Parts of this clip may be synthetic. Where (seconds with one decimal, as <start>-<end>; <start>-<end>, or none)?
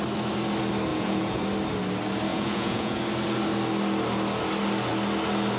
0.9-1.4; 2.3-3.0